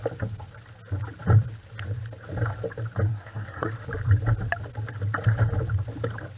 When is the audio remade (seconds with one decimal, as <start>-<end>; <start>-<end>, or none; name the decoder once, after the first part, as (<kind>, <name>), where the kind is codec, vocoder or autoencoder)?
3.1-3.7 (codec, SNAC)